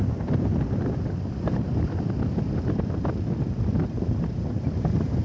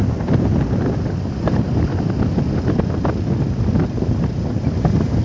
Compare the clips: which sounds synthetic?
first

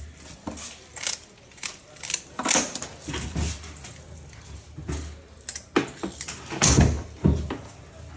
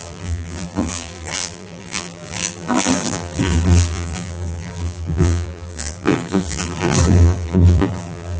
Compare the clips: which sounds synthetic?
second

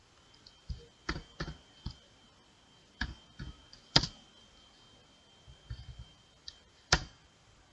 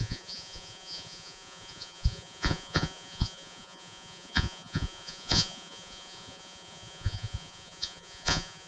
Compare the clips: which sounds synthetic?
second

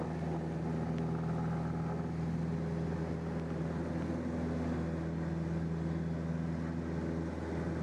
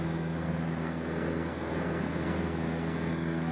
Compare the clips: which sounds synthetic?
second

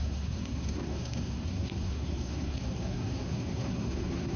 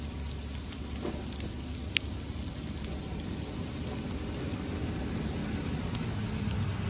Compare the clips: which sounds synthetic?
first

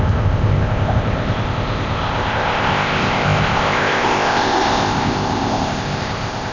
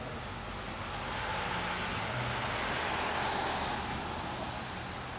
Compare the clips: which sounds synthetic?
first